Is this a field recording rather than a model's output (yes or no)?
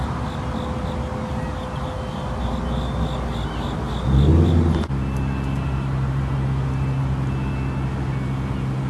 yes